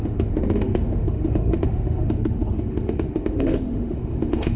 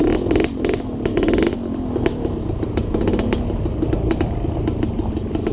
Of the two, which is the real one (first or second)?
second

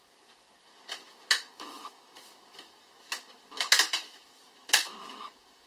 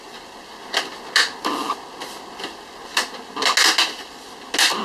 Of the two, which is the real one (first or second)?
second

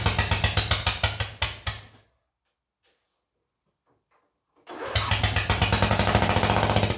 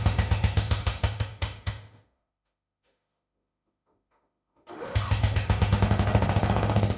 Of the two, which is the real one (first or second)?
first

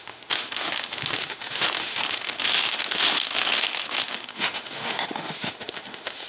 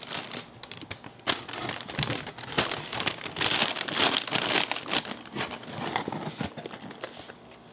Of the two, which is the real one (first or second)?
second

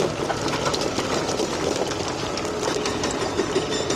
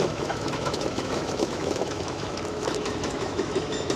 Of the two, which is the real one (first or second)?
first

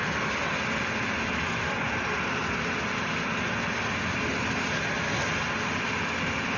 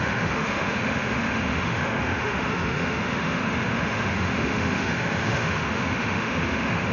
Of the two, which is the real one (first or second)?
first